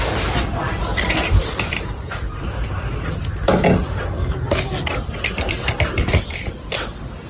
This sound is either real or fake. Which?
real